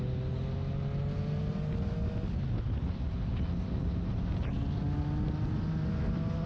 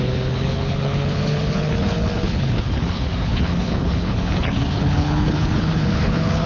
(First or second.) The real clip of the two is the first